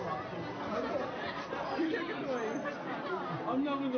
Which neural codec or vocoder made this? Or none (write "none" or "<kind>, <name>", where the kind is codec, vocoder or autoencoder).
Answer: none